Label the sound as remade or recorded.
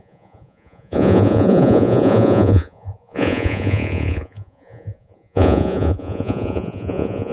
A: remade